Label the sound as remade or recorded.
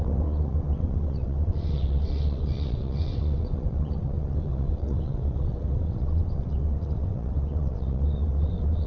remade